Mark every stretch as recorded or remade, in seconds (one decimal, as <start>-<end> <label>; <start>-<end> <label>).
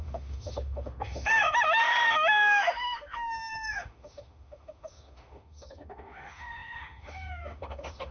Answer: 0.0-8.1 remade